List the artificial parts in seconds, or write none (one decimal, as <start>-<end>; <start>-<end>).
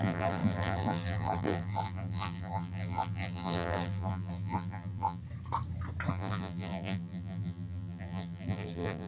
0.0-5.2; 6.1-9.1